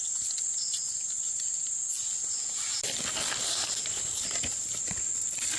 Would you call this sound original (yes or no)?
yes